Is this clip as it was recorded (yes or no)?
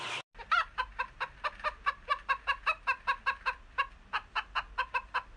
yes